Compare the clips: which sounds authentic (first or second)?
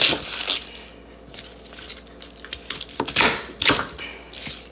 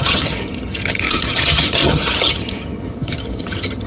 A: first